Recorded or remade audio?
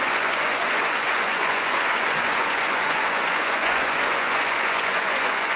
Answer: remade